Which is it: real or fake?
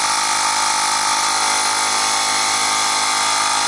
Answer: real